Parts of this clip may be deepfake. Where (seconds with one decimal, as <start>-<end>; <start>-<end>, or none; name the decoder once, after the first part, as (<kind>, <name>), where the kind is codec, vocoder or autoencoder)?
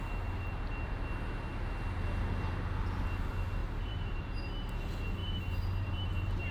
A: 3.6-4.4 (vocoder, BigVGAN v2); 5.2-6.5